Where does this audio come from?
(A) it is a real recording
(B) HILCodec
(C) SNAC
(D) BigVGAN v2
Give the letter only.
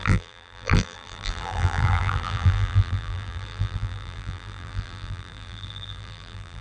D